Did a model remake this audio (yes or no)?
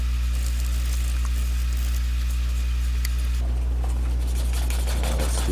no